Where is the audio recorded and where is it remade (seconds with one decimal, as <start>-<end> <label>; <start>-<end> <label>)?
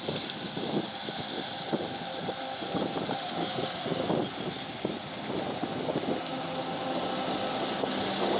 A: 0.0-3.4 recorded; 3.4-4.1 remade; 4.1-8.4 recorded